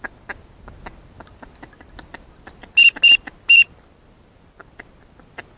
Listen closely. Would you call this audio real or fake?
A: real